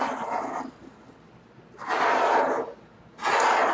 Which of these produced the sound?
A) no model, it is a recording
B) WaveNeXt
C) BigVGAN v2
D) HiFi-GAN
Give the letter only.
A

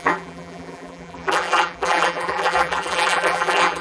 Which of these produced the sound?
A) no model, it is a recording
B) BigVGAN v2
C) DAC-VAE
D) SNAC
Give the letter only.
B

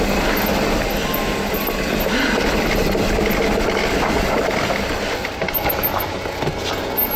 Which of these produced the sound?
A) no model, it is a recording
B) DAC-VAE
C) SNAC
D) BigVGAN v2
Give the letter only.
A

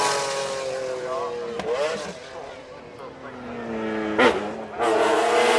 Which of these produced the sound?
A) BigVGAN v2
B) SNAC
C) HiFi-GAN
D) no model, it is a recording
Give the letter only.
D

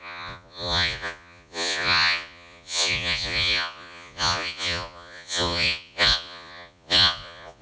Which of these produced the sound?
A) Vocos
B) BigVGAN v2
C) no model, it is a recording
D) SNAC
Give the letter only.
A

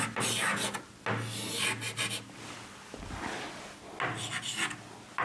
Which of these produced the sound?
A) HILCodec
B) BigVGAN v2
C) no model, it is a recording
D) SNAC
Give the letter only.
C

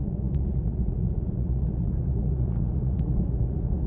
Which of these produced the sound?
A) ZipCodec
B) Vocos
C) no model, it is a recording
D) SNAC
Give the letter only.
B